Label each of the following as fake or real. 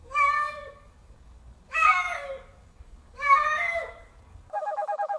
fake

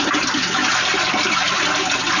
real